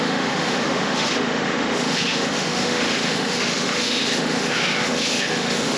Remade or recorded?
remade